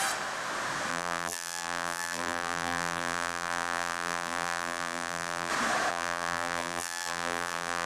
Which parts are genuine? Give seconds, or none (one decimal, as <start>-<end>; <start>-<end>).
0.0-0.9; 5.5-5.9